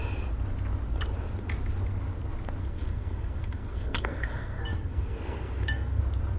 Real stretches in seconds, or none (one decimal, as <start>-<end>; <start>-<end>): 0.0-2.6; 6.0-6.4